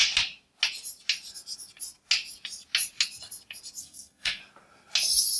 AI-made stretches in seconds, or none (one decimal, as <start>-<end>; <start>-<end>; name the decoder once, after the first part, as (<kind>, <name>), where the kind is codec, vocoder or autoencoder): 3.8-4.4 (codec, SNAC)